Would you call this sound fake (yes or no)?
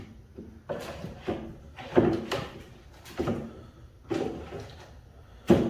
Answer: no